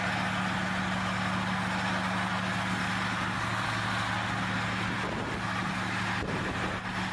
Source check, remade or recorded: recorded